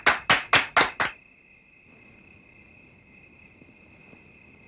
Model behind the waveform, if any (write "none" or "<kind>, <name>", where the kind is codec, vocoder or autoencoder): none